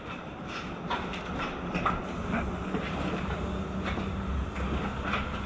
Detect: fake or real real